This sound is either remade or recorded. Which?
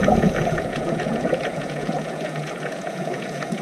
remade